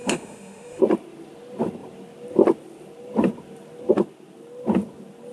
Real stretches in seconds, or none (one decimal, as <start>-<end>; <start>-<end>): 0.8-5.3